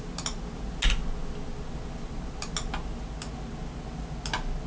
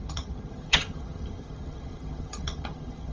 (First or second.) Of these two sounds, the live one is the first